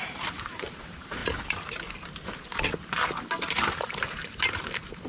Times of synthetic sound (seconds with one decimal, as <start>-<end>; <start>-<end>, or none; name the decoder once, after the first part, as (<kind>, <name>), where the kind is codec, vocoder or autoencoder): 0.0-1.2 (vocoder, BigVGAN v2); 3.5-5.1